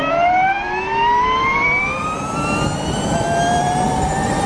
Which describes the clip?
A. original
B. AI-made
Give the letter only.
A